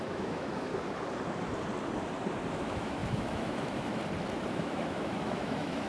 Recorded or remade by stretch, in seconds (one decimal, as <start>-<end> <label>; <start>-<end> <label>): 0.0-0.7 remade; 0.7-2.5 recorded; 2.5-4.0 remade; 4.0-4.5 recorded; 4.5-5.9 remade